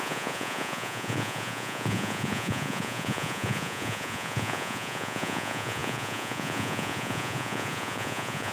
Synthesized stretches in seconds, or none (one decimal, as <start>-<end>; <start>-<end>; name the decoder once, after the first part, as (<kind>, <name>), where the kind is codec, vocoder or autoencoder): 0.0-8.5 (vocoder, Vocos)